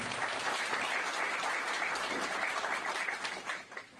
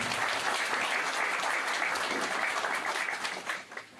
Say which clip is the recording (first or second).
second